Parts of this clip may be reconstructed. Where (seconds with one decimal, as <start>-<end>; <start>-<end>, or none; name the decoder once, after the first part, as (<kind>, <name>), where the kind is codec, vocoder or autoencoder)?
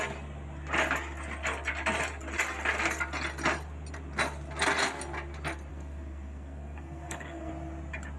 5.7-7.5 (codec, SNAC)